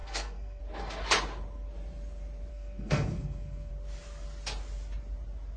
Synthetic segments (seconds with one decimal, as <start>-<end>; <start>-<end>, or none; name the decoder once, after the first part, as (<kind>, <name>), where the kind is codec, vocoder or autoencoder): 0.0-0.6 (codec, SNAC); 2.5-3.7